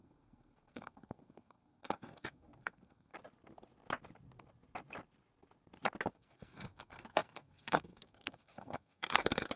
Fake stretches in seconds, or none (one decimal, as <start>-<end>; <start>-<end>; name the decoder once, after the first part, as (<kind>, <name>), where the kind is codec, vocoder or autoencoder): 0.0-3.1 (codec, SNAC); 6.1-9.6